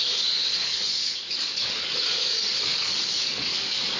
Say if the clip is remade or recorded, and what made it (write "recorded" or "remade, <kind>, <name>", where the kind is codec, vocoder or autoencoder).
remade, codec, DAC